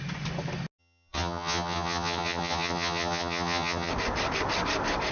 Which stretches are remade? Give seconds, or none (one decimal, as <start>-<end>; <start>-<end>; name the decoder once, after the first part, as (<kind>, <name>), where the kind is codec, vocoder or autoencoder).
0.8-3.9 (vocoder, HiFi-GAN)